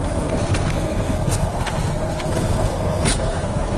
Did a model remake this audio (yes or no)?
yes